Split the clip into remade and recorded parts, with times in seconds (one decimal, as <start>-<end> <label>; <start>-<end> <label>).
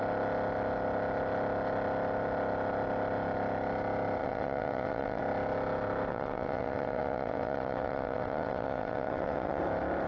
0.0-4.2 recorded; 4.2-5.2 remade; 5.2-6.1 recorded; 6.1-9.6 remade; 9.6-10.1 recorded